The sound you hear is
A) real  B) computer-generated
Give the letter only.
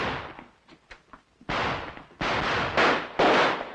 A